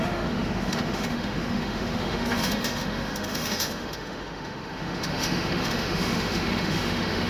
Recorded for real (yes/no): no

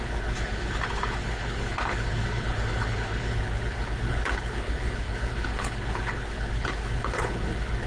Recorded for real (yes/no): no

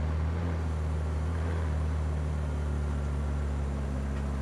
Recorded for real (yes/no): yes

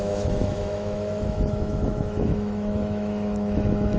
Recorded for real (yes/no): no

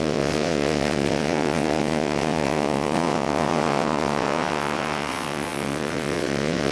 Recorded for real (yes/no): no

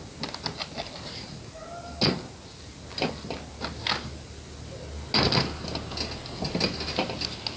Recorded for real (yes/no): yes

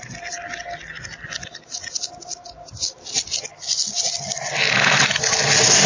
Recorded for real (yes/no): yes